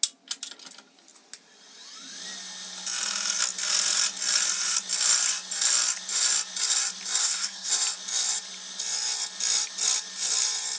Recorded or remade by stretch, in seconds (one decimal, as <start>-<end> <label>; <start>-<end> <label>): 0.0-7.2 recorded; 7.2-7.7 remade; 7.7-10.8 recorded